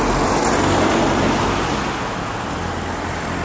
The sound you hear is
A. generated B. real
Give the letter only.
B